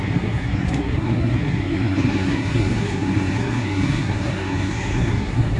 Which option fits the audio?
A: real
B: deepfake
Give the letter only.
B